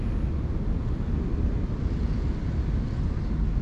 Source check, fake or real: real